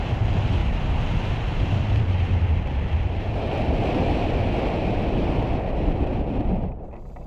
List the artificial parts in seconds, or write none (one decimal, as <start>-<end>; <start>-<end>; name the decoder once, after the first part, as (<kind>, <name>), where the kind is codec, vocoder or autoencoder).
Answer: 0.6-2.3 (vocoder, BigVGAN v2)